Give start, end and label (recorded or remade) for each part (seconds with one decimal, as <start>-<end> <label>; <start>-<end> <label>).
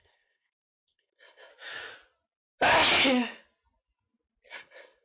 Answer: 0.0-1.5 remade; 1.5-4.5 recorded; 4.5-5.0 remade